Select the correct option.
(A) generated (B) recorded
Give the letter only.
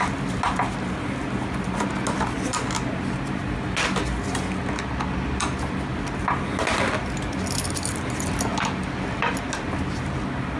B